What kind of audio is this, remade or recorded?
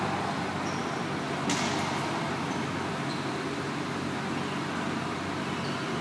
recorded